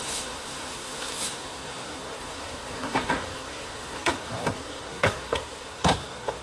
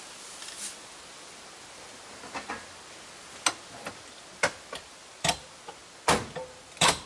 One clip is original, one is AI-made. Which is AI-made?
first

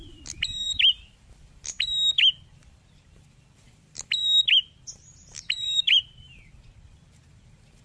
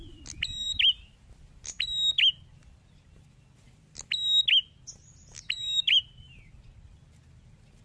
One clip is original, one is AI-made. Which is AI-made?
first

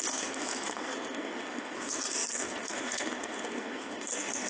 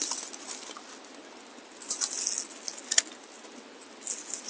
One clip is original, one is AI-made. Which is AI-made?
first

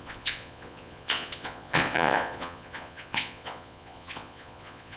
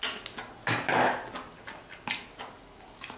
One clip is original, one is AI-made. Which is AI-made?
first